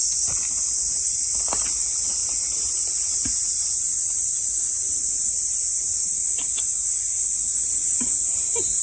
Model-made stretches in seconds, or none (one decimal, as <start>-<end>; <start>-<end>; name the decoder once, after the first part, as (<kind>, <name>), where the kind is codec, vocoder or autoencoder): 2.2-5.1 (vocoder, BigVGAN v2)